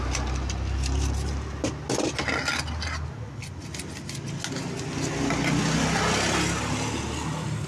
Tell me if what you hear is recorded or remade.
recorded